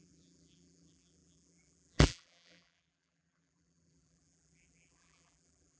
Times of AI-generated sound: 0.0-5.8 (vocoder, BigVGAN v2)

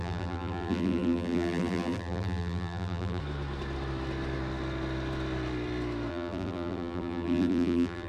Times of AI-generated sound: 0.0-3.2 (vocoder, BigVGAN v2); 6.1-8.1

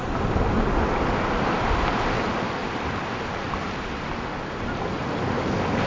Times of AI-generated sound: none

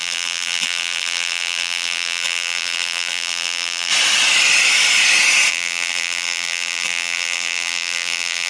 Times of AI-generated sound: 0.0-3.9 (vocoder, BigVGAN v2); 5.5-8.5

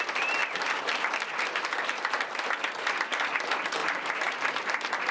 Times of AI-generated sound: 3.8-4.6 (vocoder, BigVGAN v2)

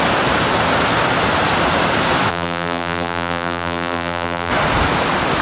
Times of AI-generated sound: 2.3-4.5 (vocoder, BigVGAN v2)

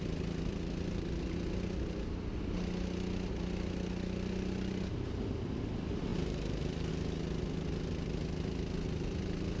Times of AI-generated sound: 6.1-6.9 (vocoder, BigVGAN v2)